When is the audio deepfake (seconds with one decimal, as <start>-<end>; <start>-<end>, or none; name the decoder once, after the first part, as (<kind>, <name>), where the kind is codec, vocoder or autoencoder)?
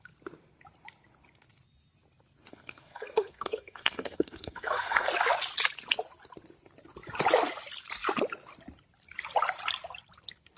2.5-5.1 (codec, SNAC)